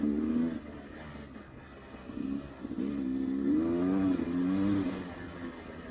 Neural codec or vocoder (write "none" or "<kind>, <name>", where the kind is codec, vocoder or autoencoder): none